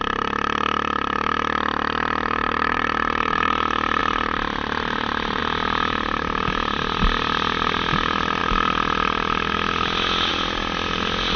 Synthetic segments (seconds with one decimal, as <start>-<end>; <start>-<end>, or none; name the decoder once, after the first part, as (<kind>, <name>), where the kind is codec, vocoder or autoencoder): 2.4-3.6 (vocoder, BigVGAN v2); 4.0-5.4